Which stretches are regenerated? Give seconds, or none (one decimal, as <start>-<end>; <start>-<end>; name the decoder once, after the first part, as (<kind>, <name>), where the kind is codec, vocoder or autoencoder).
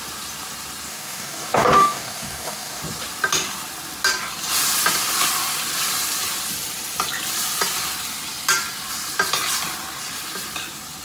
0.9-2.8 (codec, DAC)